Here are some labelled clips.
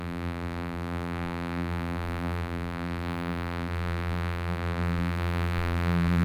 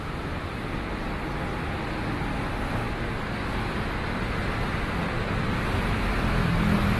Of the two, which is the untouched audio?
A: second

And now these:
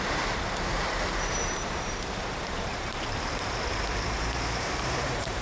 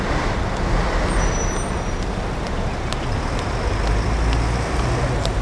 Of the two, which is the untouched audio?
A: second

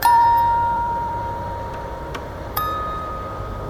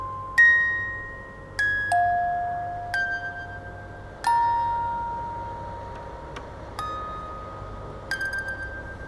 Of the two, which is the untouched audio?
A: second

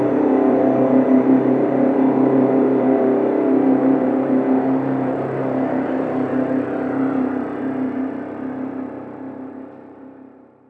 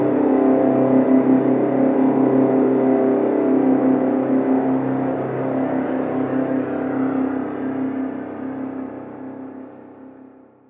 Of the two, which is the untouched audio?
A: second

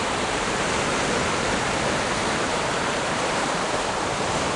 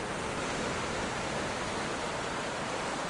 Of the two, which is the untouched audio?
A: second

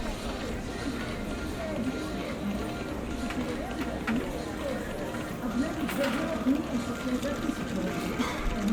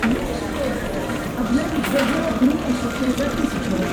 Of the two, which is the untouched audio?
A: first